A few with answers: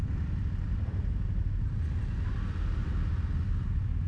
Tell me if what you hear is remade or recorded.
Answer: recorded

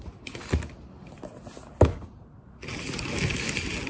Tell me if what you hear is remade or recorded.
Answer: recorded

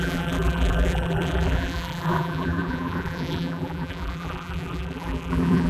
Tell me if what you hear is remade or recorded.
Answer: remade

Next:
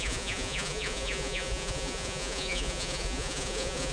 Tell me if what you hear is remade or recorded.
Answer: remade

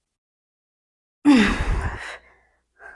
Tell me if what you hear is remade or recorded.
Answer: recorded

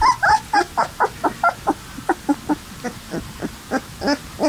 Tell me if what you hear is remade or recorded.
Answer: recorded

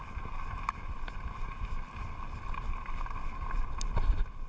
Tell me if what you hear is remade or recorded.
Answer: recorded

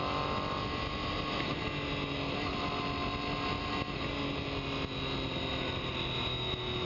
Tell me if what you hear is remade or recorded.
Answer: recorded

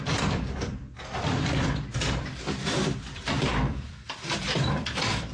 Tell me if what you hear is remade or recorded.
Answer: remade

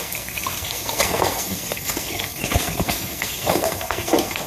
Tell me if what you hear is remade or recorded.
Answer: remade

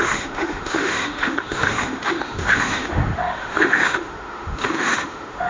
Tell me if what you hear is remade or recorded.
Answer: remade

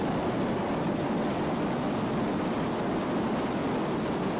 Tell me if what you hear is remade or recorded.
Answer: recorded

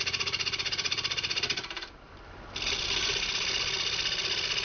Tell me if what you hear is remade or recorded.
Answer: recorded